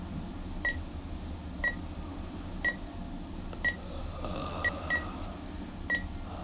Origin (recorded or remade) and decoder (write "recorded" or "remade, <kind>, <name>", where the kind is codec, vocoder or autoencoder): recorded